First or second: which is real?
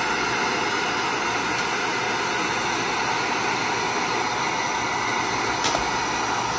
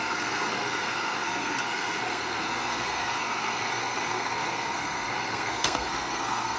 first